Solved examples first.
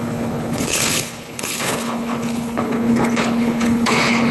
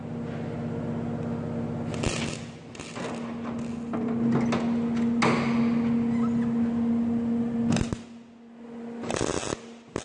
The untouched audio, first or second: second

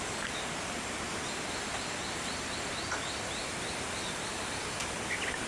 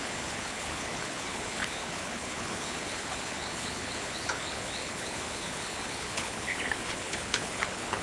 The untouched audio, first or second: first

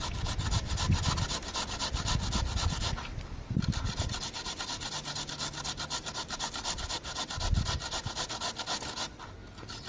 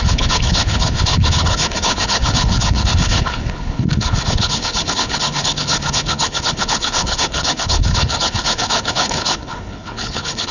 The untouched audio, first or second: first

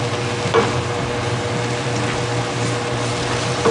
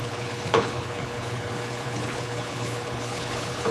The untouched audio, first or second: first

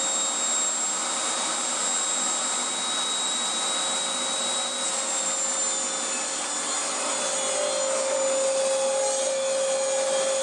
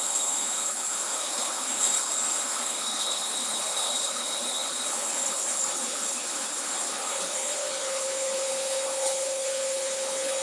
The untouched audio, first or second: first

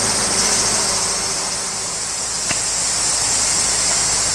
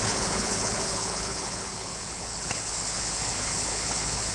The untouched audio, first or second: first